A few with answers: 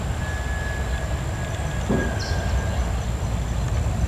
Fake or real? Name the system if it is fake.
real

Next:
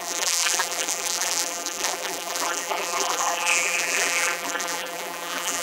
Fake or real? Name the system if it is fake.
fake, vocoder, BigVGAN v2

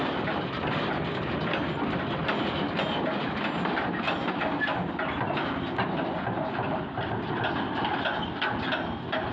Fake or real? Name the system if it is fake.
real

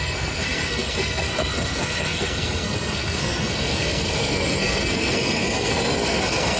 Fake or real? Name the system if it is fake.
fake, codec, SNAC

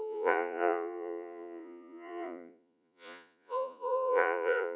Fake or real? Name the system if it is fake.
fake, vocoder, Vocos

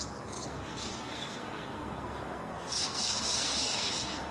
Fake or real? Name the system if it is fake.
fake, codec, SNAC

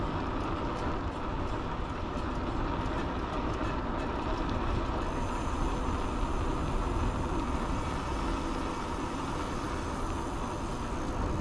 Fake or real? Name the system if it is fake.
real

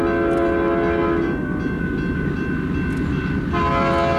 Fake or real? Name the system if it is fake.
real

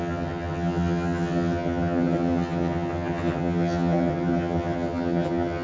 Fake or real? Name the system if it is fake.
fake, vocoder, HiFi-GAN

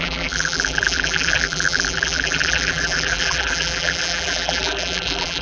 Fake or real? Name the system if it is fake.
fake, vocoder, BigVGAN v2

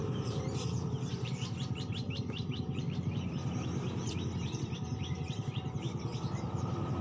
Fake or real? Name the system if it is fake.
fake, vocoder, BigVGAN v2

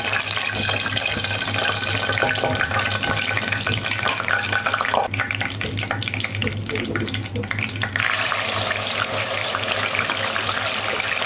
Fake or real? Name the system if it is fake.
real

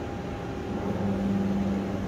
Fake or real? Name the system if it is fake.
real